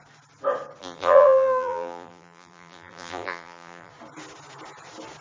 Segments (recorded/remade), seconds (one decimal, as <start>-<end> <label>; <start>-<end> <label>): 0.0-0.8 recorded; 0.8-3.9 remade; 3.9-5.2 recorded